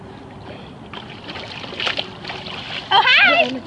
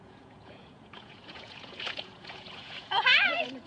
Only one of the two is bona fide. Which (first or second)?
first